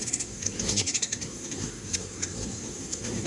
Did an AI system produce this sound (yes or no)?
yes